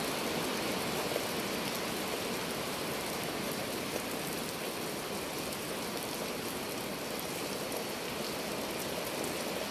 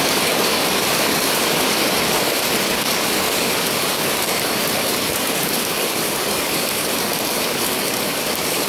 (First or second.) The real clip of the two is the first